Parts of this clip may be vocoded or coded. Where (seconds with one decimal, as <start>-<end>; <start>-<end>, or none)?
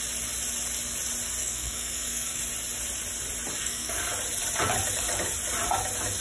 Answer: 1.4-2.4; 3.6-4.1